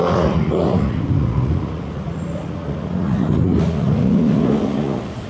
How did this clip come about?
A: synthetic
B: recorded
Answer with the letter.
A